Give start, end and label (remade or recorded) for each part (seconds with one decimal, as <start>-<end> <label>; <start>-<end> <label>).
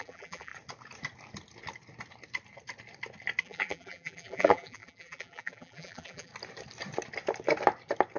0.0-0.5 remade; 0.5-3.4 recorded; 3.4-6.3 remade; 6.3-8.2 recorded